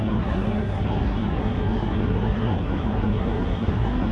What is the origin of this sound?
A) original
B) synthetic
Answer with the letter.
B